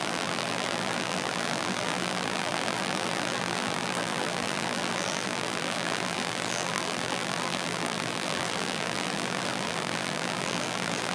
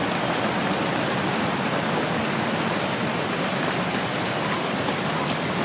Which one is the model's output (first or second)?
first